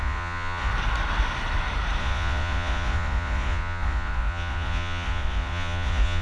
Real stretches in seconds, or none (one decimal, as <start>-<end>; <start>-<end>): 0.7-2.0